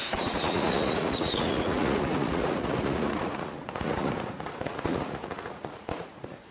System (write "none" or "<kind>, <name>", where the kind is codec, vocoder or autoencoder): vocoder, Vocos